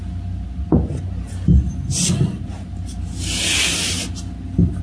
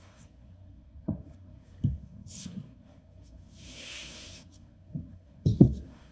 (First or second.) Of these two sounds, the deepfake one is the second